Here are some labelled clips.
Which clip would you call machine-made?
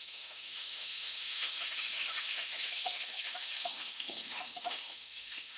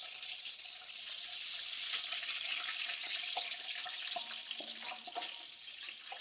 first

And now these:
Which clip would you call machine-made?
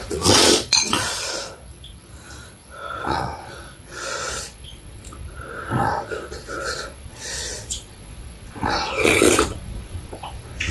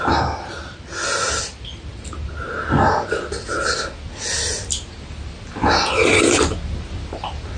first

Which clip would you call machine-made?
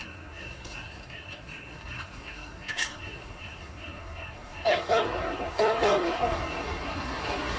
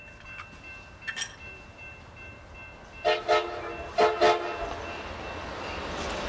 first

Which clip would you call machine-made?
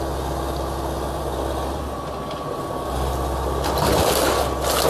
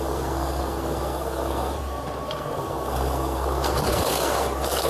second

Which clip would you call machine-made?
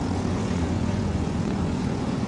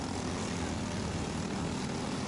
first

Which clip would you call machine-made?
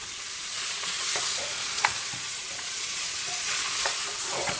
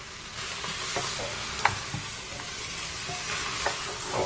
first